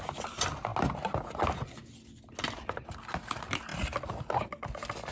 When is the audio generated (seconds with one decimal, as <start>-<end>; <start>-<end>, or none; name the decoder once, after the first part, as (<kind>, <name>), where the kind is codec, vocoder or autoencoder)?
none